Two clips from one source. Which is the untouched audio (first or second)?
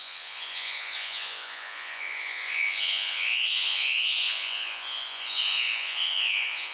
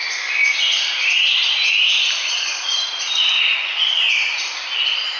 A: second